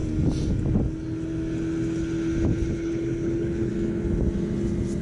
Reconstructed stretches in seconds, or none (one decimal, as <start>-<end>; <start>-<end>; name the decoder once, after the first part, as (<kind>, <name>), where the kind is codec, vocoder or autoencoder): 2.6-3.7 (codec, HILCodec)

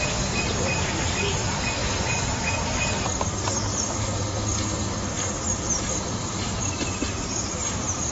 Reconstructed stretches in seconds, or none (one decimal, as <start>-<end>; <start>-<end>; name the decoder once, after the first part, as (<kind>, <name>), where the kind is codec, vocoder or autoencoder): none

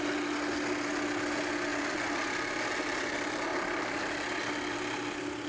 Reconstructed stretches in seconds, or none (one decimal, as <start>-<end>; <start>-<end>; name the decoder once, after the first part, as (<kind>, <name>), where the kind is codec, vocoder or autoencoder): 1.7-2.7 (vocoder, BigVGAN v2); 3.5-4.5